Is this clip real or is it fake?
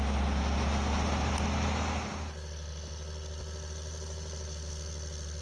real